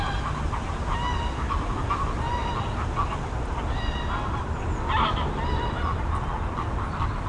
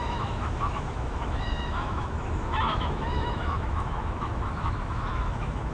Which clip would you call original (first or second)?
first